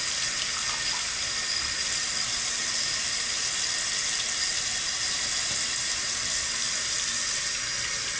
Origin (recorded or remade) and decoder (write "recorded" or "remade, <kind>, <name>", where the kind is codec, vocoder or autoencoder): recorded